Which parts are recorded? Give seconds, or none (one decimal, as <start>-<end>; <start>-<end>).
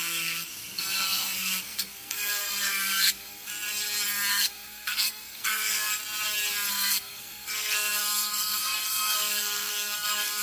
3.5-4.3; 6.0-6.7